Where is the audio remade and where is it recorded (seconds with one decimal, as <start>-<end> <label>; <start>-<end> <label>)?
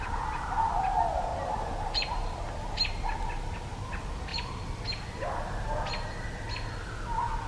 0.0-1.3 recorded; 1.3-2.4 remade; 2.4-7.5 recorded